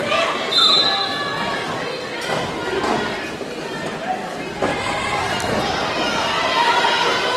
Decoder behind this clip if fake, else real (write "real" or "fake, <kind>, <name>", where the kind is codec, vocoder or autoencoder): real